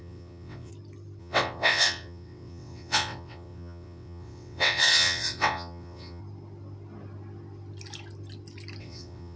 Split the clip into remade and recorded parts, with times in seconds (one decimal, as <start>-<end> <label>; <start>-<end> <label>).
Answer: 0.0-0.7 remade; 0.7-1.2 recorded; 1.2-6.2 remade; 6.2-8.8 recorded; 8.8-9.4 remade